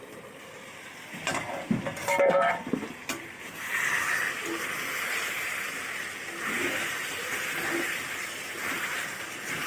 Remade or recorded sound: recorded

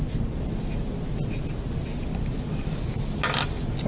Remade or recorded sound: recorded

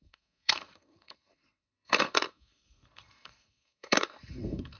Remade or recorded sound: remade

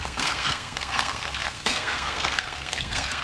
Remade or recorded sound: remade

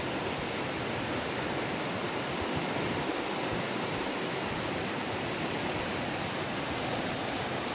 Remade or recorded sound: recorded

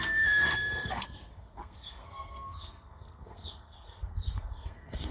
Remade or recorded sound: remade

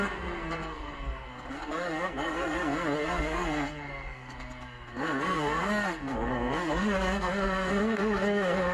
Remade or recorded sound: remade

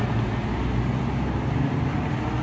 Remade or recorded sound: recorded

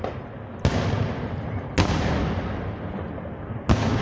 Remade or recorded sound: recorded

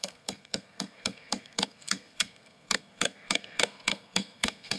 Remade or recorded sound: remade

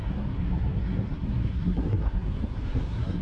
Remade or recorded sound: remade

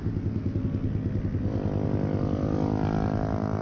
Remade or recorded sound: recorded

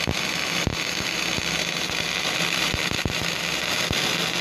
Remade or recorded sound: recorded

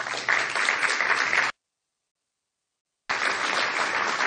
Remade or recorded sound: recorded